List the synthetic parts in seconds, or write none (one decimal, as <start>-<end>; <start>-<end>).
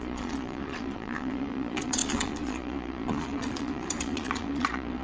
0.0-5.0